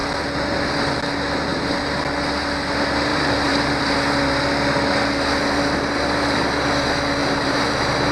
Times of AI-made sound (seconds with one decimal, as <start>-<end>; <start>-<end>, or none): 3.1-3.8; 7.2-8.1